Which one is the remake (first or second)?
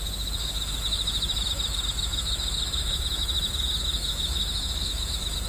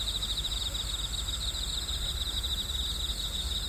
first